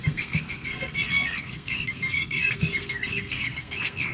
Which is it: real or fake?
fake